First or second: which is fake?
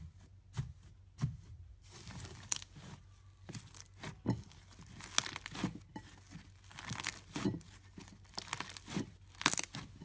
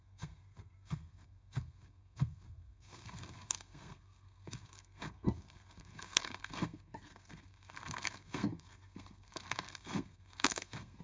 second